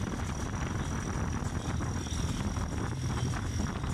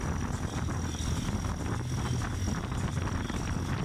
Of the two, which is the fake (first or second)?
first